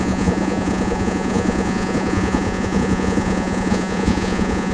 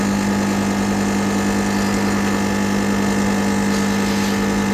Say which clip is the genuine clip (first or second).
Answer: second